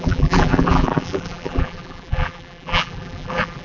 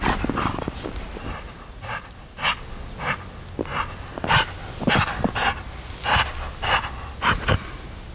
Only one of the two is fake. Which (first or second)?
first